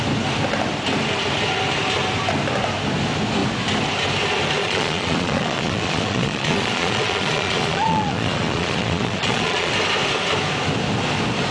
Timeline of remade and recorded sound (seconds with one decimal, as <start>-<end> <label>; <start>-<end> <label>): 0.0-4.6 recorded; 4.6-9.7 remade; 9.7-11.5 recorded